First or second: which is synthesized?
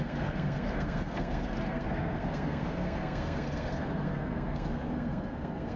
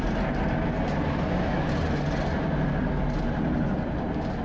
first